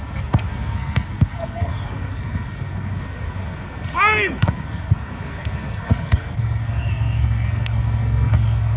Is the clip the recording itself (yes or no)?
no